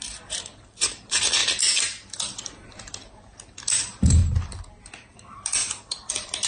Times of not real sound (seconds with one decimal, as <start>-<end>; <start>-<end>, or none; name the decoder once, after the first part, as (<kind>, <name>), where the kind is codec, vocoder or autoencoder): 0.0-1.4 (vocoder, BigVGAN v2); 3.7-4.2; 5.1-6.5